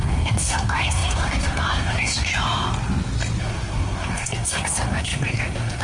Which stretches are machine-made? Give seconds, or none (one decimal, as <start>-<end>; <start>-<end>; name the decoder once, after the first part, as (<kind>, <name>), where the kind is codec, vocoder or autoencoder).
0.0-2.3 (codec, SNAC); 3.4-5.8